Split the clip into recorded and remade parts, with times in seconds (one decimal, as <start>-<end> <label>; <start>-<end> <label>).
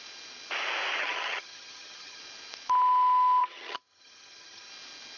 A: 0.0-1.0 recorded; 1.0-2.2 remade; 2.2-3.4 recorded; 3.4-4.7 remade; 4.7-5.2 recorded